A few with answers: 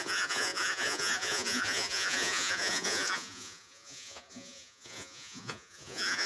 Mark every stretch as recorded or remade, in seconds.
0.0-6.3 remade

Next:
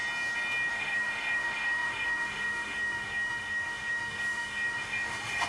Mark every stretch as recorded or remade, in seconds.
0.0-0.7 recorded; 0.7-5.5 remade

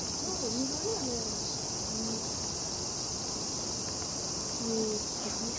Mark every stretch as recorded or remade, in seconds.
0.0-5.6 recorded

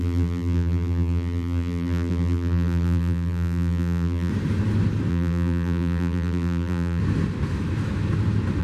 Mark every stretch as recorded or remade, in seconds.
0.0-4.3 remade; 4.3-5.1 recorded; 5.1-7.0 remade; 7.0-8.6 recorded

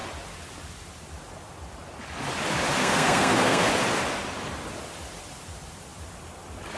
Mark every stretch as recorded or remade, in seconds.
0.0-2.8 recorded; 2.8-3.7 remade; 3.7-6.8 recorded

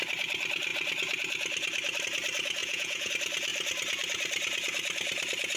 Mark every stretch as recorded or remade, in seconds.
0.0-2.6 recorded; 2.6-3.1 remade; 3.1-5.6 recorded

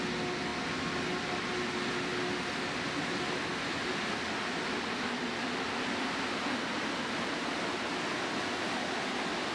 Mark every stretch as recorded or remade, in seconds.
0.0-9.5 recorded

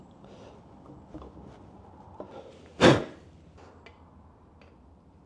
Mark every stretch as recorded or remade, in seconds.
0.0-5.3 recorded